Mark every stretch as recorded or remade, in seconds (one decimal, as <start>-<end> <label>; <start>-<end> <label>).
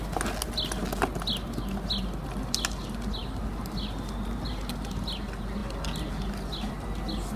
0.0-7.4 recorded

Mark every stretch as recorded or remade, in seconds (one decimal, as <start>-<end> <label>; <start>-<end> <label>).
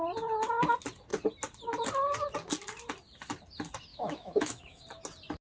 0.0-3.9 recorded; 3.9-4.8 remade; 4.8-5.4 recorded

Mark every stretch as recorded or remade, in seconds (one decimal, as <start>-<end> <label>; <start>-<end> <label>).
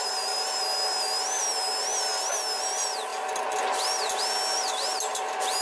0.0-5.6 recorded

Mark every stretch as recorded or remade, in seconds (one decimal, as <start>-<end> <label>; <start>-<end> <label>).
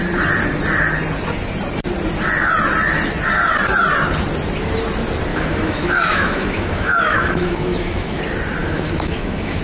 0.0-5.3 recorded; 5.3-8.2 remade; 8.2-8.6 recorded; 8.6-9.6 remade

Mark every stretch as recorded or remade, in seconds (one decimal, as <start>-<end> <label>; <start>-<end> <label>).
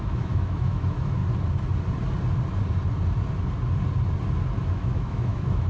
0.0-1.2 remade; 1.2-4.6 recorded; 4.6-5.7 remade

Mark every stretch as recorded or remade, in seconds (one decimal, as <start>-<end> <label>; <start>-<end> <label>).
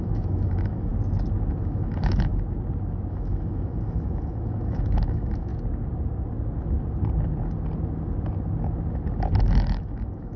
0.0-0.9 remade; 0.9-1.6 recorded; 1.6-2.3 remade; 2.3-3.1 recorded; 3.1-5.5 remade; 5.5-9.4 recorded; 9.4-10.4 remade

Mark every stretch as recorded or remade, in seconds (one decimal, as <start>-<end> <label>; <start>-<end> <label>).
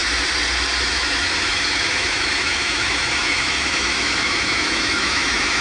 0.0-0.9 recorded; 0.9-5.6 remade